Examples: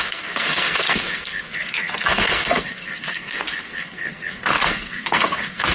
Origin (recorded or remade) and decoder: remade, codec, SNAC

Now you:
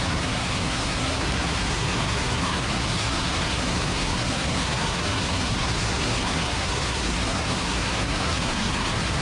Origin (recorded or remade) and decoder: remade, codec, SNAC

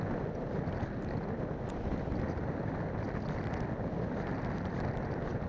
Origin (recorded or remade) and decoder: recorded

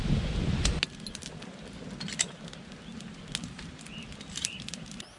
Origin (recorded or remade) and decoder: recorded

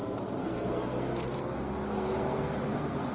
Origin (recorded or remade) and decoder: remade, codec, SNAC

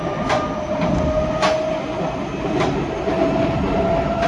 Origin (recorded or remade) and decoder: recorded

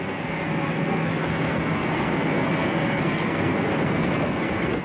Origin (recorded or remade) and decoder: remade, codec, SNAC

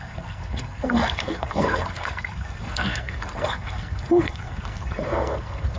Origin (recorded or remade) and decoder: remade, codec, SNAC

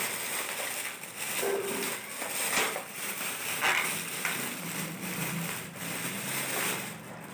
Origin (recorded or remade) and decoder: recorded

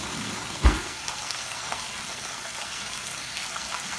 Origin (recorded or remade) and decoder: remade, codec, SNAC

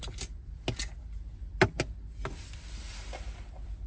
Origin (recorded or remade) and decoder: recorded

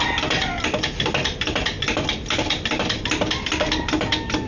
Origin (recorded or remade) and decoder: recorded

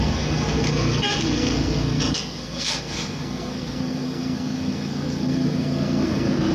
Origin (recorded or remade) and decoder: remade, codec, SNAC